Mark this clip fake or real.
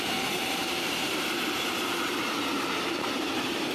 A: fake